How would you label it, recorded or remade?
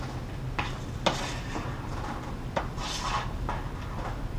recorded